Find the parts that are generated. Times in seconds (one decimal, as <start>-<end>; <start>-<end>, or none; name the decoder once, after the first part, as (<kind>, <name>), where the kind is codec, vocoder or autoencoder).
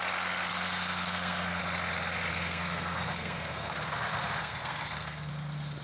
0.5-1.6 (codec, SNAC); 2.3-3.7; 4.4-5.3